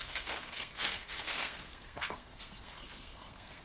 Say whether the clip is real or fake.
fake